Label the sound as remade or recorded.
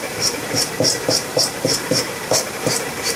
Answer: remade